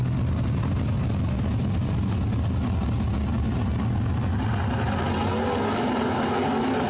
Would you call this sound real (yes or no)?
yes